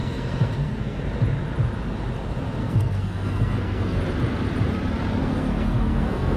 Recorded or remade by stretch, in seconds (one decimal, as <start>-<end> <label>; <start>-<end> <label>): 0.0-1.0 remade; 1.0-2.6 recorded; 2.6-4.0 remade; 4.0-5.2 recorded; 5.2-6.4 remade